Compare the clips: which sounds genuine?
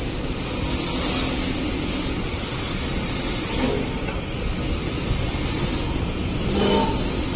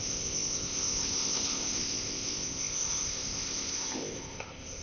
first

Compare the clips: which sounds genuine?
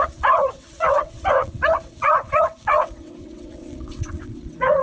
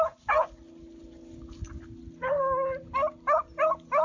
second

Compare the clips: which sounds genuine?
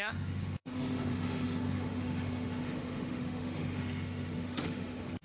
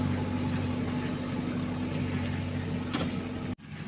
second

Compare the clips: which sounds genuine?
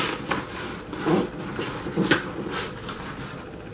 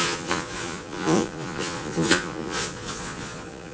first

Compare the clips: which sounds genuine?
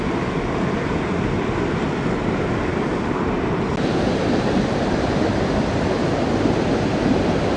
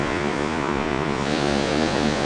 first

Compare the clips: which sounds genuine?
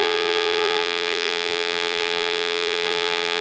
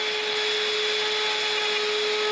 second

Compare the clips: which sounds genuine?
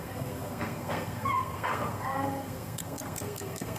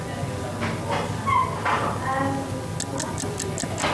second